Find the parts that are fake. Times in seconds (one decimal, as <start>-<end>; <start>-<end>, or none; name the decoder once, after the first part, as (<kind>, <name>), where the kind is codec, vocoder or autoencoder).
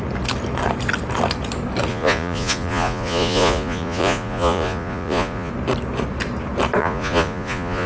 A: 1.9-5.5 (vocoder, Vocos); 6.8-7.9